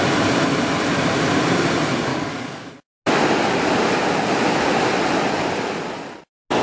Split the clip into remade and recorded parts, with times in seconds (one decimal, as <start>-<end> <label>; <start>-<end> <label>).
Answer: 0.0-2.1 recorded; 2.1-2.7 remade; 2.7-6.6 recorded